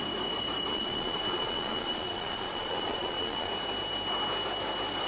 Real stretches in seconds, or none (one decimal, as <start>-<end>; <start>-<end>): 0.0-0.7; 3.5-5.1